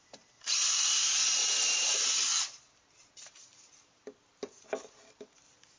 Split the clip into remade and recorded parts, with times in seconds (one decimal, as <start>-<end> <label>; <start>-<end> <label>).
0.0-5.8 remade